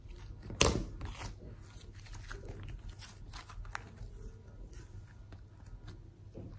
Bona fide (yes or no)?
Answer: yes